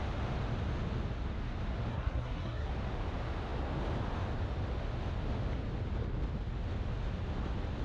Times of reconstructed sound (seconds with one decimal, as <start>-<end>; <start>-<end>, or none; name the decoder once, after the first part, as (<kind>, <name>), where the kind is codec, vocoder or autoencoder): 1.9-2.7 (codec, SNAC)